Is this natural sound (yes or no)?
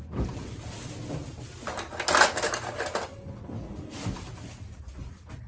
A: yes